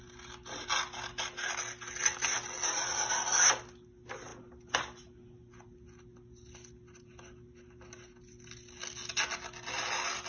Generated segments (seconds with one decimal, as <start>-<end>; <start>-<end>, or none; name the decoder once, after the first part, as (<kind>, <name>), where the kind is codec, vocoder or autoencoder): none